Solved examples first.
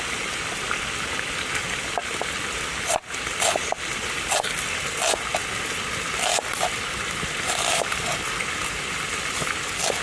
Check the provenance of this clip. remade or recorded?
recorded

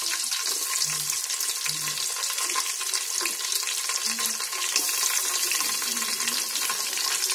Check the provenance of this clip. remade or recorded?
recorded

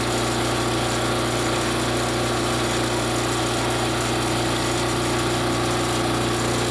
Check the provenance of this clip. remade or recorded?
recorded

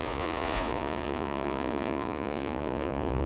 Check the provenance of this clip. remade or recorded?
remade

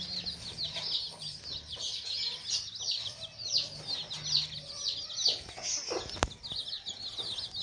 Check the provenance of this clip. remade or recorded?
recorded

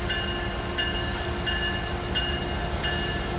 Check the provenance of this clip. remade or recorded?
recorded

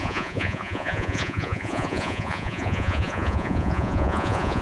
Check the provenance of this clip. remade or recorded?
remade